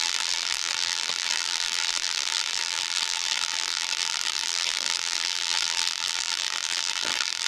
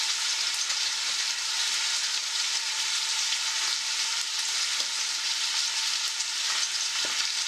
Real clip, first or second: second